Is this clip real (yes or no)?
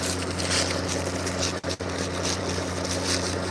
yes